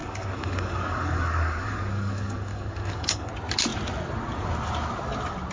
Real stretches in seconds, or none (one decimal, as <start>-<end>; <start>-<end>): 3.3-5.5